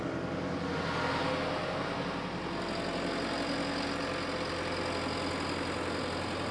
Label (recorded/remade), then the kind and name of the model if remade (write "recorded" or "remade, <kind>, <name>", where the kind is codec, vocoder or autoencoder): recorded